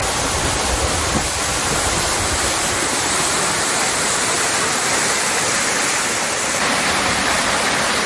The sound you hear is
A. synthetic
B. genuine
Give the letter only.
A